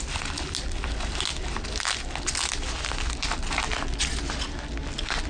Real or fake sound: real